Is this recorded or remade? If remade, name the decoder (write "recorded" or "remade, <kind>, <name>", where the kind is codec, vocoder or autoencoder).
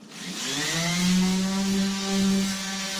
recorded